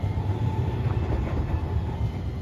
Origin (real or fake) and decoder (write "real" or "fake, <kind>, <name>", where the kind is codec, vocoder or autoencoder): real